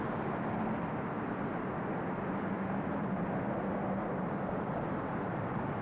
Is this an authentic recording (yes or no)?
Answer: yes